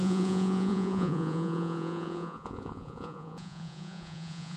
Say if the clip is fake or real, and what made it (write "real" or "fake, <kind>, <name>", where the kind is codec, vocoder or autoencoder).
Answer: fake, vocoder, Vocos